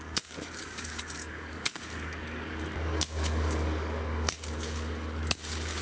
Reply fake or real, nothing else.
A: fake